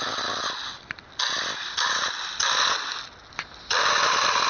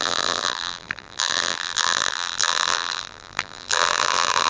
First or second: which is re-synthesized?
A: second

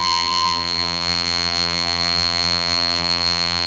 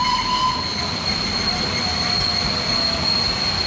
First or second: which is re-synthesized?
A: first